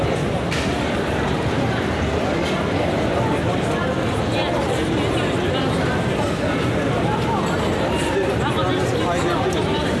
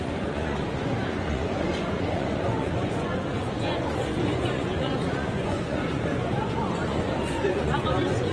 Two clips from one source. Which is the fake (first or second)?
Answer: second